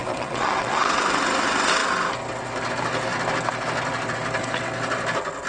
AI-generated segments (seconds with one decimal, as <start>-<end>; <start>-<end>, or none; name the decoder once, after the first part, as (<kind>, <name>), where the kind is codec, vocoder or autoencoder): 0.0-1.0 (vocoder, WaveNeXt)